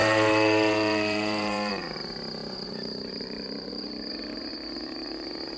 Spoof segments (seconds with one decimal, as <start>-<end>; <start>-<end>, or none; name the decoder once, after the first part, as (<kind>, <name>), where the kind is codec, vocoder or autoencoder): 0.0-1.7 (vocoder, BigVGAN v2); 2.4-3.9